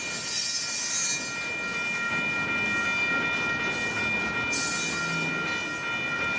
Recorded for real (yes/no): yes